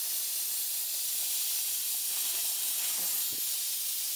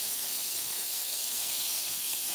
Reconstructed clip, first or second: second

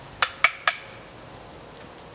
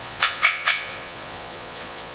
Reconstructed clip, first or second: second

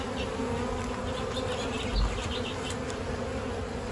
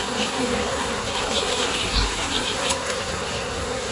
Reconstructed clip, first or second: second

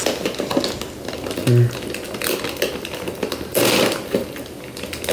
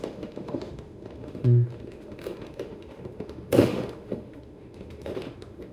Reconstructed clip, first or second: second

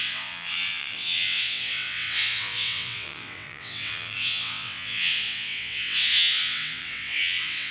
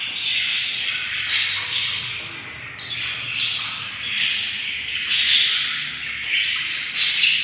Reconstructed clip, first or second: first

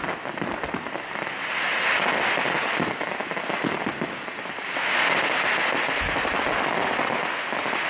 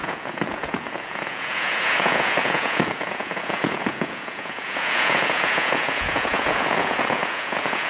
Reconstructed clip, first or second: second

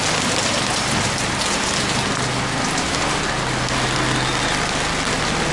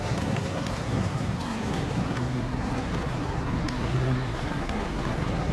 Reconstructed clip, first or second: second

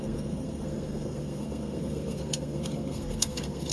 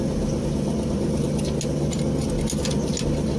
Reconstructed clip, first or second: first